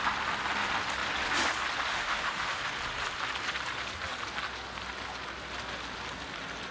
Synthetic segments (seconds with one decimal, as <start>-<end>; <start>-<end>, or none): 1.9-2.6